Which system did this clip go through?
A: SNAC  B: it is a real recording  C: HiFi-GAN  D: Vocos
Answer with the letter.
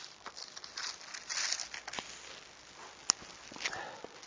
B